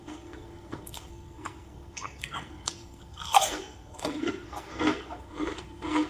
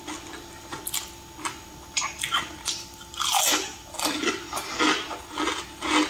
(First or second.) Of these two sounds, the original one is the second